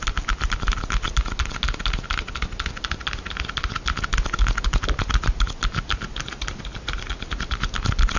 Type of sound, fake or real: real